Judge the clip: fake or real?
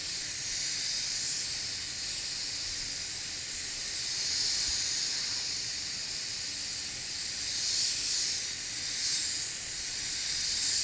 real